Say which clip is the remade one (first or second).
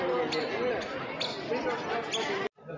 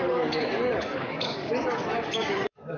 second